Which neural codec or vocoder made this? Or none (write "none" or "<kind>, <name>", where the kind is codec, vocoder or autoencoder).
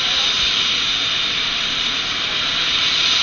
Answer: none